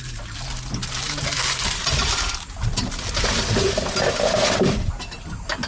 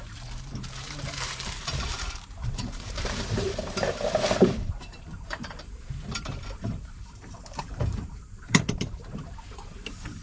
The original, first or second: first